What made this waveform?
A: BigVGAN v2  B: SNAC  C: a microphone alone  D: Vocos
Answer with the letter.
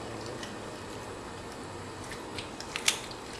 C